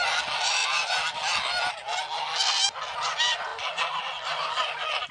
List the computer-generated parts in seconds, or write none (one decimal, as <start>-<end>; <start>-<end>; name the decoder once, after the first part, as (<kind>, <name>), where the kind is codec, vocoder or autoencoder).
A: none